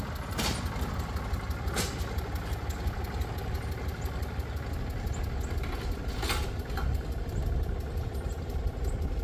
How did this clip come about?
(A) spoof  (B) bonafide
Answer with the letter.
B